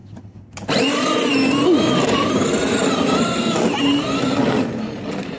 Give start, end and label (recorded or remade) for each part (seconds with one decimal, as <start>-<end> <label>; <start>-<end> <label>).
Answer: 0.0-1.3 remade; 1.3-2.6 recorded; 2.6-3.4 remade; 3.4-5.4 recorded

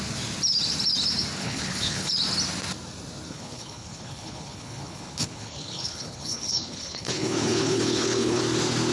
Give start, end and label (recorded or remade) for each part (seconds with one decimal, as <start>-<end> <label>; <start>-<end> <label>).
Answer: 0.0-1.4 recorded; 1.4-2.1 remade; 2.1-3.3 recorded; 3.3-8.4 remade; 8.4-8.9 recorded

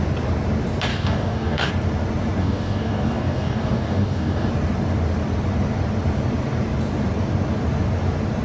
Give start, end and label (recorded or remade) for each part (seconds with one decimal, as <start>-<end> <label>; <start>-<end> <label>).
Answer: 0.0-0.9 recorded; 0.9-1.7 remade; 1.7-2.4 recorded; 2.4-4.5 remade; 4.5-8.4 recorded

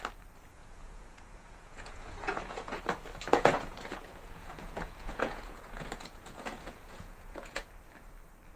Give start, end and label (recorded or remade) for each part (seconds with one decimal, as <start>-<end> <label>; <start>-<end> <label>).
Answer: 0.0-0.6 recorded; 0.6-2.8 remade; 2.8-3.3 recorded; 3.3-7.7 remade; 7.7-8.6 recorded

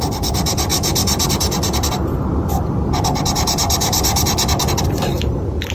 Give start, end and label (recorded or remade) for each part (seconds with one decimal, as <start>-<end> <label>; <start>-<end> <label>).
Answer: 0.0-5.7 recorded

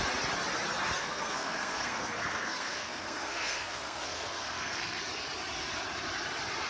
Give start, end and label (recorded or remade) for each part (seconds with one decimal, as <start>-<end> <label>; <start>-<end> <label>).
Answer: 0.0-1.0 recorded; 1.0-5.0 remade; 5.0-6.7 recorded

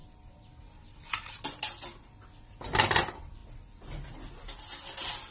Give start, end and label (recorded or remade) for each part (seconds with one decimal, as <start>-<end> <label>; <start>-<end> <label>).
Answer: 0.0-5.3 recorded